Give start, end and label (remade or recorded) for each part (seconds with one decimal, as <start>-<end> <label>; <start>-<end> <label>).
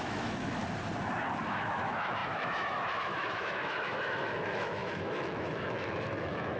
0.0-0.6 remade; 0.6-1.4 recorded; 1.4-6.6 remade